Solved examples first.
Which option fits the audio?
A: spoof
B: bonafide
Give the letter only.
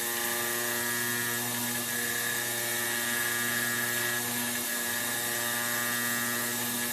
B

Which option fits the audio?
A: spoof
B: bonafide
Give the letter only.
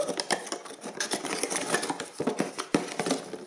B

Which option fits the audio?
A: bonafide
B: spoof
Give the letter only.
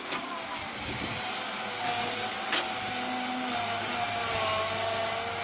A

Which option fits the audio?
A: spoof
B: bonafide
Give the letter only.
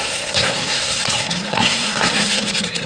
A